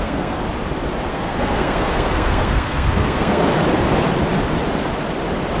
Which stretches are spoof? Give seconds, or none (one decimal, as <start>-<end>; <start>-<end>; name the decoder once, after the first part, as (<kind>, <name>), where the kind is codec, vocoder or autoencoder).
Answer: 0.0-0.4 (codec, SNAC); 1.1-3.4